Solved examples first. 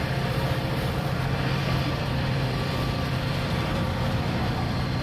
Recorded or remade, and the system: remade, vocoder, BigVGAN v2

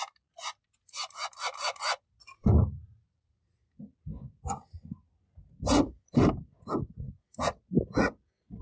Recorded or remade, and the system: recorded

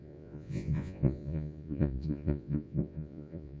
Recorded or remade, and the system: remade, vocoder, Vocos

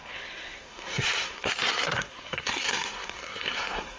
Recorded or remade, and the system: remade, codec, SNAC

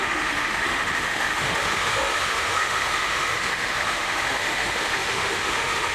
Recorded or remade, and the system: remade, autoencoder, DAC-VAE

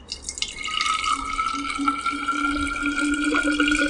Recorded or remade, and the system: recorded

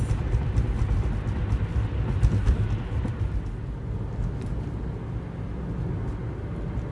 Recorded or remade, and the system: recorded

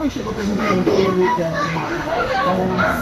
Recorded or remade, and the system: remade, autoencoder, DAC-VAE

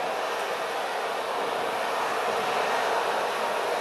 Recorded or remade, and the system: recorded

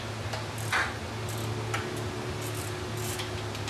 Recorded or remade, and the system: recorded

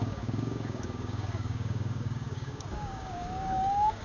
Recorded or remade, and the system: remade, codec, DAC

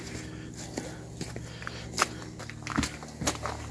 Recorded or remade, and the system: recorded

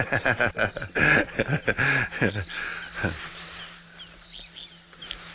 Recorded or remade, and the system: recorded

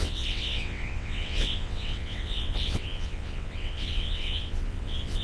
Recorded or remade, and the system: remade, vocoder, WaveNeXt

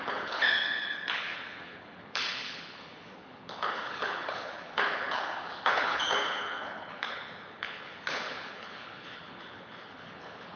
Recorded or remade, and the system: remade, codec, HILCodec